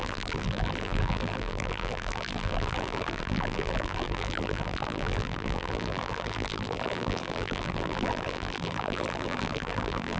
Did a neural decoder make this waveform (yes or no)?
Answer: yes